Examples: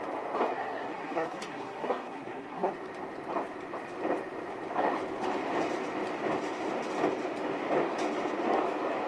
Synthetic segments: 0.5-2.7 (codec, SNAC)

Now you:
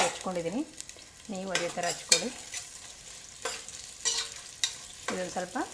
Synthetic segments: 1.3-2.8 (vocoder, BigVGAN v2)

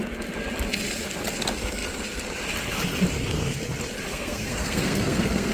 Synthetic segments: 4.1-5.5 (codec, SNAC)

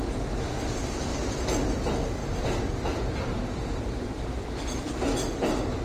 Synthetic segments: 2.2-3.5 (vocoder, BigVGAN v2)

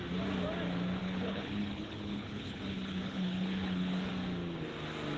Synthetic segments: 1.0-4.1 (codec, HILCodec)

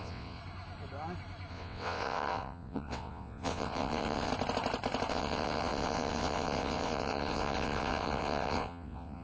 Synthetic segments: 0.0-0.4 (vocoder, WaveNeXt); 1.5-4.3; 5.1-9.2

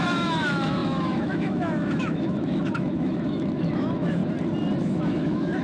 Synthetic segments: 0.0-4.2 (autoencoder, DAC-VAE); 4.8-5.6

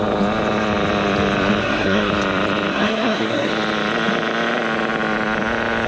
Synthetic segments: 1.6-2.1 (codec, SNAC); 2.7-3.5